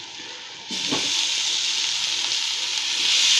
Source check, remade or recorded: recorded